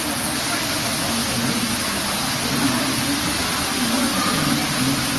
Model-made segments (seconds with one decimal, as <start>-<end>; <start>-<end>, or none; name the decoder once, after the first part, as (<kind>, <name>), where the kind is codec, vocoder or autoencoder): none